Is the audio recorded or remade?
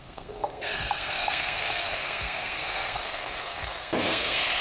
remade